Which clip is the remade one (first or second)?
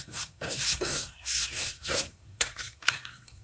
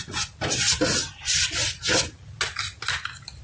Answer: first